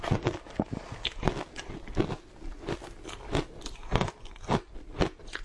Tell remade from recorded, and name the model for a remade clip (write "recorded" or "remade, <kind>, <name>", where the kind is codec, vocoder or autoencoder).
recorded